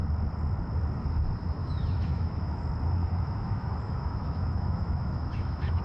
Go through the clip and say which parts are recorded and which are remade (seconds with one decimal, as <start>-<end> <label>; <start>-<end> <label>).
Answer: 0.0-1.6 recorded; 1.6-2.6 remade; 2.6-3.0 recorded; 3.0-5.8 remade